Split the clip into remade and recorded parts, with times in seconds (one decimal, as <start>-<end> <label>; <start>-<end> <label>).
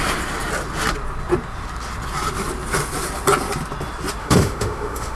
0.0-4.2 recorded; 4.2-5.2 remade